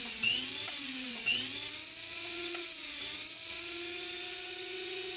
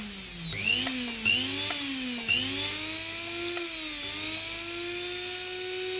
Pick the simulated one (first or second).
first